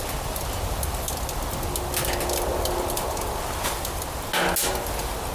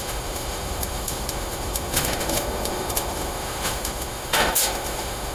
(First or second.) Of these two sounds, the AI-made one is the second